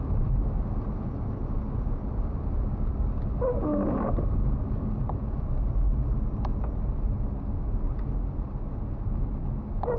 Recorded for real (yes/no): yes